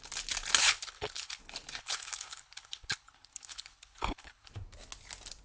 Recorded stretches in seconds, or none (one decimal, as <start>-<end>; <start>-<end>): 0.0-0.6; 1.4-1.8; 4.5-5.4